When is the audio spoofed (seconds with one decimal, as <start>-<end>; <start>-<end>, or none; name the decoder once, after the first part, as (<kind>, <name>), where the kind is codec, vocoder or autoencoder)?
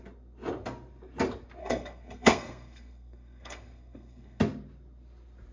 1.6-4.4 (codec, SNAC)